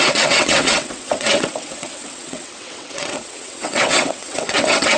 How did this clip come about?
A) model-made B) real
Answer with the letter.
A